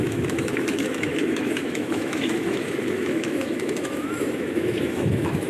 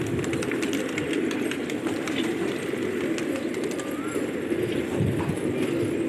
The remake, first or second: first